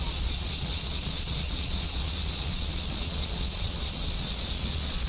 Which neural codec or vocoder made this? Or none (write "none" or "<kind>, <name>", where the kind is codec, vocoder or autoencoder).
vocoder, Vocos